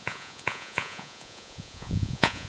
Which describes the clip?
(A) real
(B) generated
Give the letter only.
B